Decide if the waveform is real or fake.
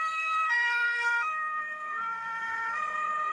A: fake